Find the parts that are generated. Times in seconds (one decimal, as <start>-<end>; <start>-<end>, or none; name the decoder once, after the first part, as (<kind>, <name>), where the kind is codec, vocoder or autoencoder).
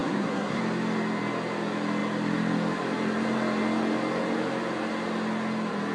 0.0-0.6 (codec, SNAC)